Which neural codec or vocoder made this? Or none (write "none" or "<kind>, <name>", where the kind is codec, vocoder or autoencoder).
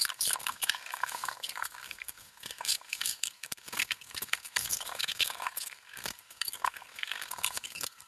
codec, SNAC